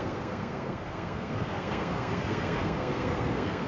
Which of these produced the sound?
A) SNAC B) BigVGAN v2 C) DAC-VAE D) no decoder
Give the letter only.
A